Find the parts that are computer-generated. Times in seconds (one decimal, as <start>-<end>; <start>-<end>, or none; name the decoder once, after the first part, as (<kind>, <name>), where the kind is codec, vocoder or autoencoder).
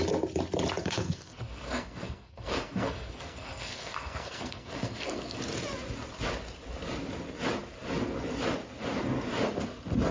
0.8-5.4 (codec, SNAC)